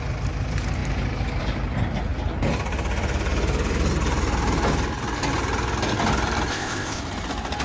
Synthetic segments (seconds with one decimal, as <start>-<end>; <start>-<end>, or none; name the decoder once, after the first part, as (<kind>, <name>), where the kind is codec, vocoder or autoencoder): 6.5-7.0 (codec, ZipCodec)